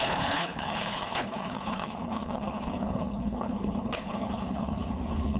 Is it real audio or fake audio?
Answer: fake